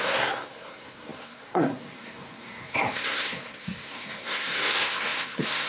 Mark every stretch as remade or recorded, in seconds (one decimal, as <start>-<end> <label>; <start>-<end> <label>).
0.0-5.7 remade